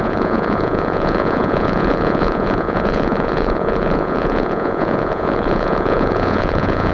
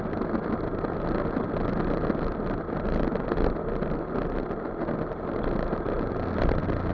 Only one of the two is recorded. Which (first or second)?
second